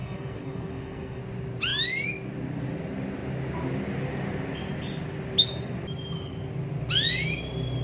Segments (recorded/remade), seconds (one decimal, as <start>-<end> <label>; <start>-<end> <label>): 0.0-1.2 remade; 1.2-7.8 recorded